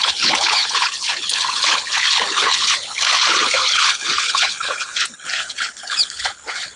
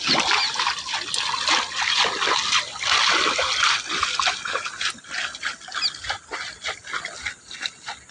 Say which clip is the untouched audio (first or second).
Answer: second